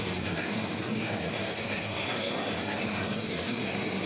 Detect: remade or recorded remade